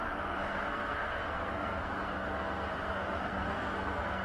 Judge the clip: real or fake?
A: fake